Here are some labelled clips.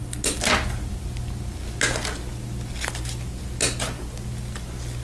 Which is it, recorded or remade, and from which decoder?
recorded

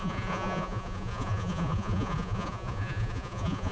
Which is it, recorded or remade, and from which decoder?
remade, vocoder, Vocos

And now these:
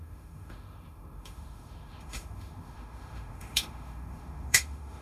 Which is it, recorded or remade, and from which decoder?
remade, autoencoder, DAC-VAE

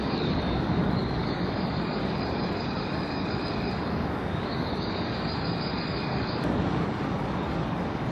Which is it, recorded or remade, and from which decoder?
remade, codec, DAC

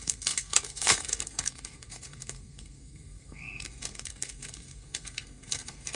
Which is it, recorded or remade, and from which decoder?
remade, codec, SNAC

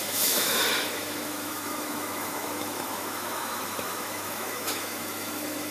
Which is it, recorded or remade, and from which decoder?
remade, autoencoder, DAC-VAE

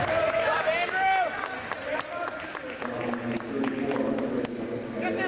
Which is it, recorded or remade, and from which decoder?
recorded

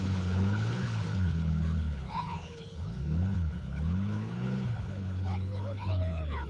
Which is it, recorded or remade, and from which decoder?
remade, codec, HILCodec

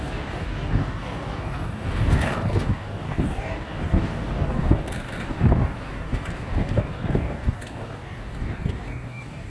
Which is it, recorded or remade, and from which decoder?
remade, codec, DAC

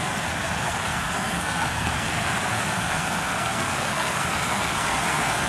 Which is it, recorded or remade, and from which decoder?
remade, codec, SNAC